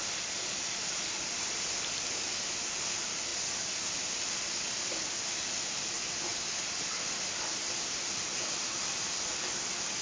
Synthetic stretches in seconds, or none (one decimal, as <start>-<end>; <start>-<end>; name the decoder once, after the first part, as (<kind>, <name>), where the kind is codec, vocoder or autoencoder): 0.0-3.3 (vocoder, BigVGAN v2); 3.8-10.0